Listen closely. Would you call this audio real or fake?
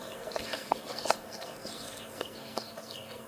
fake